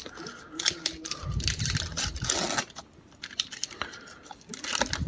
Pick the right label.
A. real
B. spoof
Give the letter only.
A